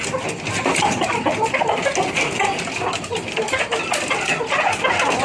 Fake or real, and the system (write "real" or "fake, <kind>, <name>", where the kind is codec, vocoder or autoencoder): real